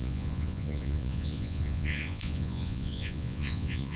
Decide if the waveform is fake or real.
fake